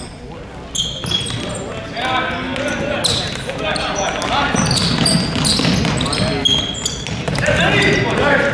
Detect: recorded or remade recorded